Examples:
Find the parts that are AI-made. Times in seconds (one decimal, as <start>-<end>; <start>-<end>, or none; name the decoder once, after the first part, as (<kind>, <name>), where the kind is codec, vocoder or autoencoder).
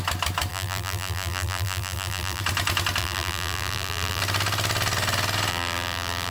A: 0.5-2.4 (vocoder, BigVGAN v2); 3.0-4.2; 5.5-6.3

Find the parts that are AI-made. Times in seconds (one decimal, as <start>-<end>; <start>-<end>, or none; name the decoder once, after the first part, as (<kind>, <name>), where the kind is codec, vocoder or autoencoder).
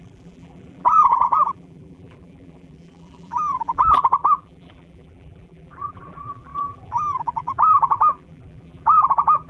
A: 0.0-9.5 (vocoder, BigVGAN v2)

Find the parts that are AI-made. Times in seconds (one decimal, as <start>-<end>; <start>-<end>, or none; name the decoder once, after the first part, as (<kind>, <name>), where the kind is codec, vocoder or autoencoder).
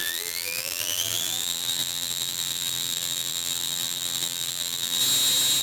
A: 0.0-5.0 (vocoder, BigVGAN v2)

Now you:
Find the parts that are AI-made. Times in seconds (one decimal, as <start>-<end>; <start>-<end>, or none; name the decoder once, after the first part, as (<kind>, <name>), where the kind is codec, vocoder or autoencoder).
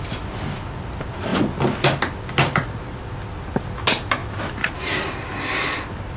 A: 4.2-4.7 (vocoder, BigVGAN v2)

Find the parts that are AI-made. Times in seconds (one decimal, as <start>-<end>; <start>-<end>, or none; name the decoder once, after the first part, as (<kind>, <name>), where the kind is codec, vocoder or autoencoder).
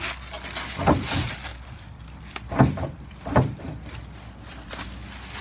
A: 1.5-4.7 (vocoder, BigVGAN v2)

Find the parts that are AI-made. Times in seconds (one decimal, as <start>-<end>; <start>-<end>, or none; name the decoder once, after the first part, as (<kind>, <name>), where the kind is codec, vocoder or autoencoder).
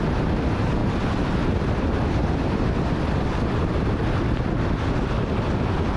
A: 0.8-4.4 (vocoder, BigVGAN v2)